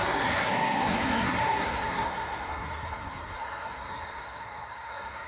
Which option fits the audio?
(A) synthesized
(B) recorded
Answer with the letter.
A